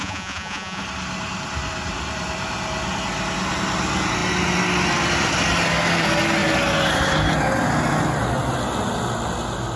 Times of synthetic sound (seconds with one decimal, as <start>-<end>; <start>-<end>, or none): 0.0-0.8